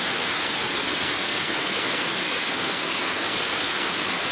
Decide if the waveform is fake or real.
fake